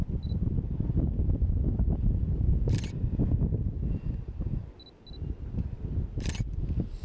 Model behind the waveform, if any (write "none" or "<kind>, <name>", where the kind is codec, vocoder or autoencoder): none